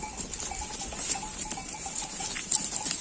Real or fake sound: real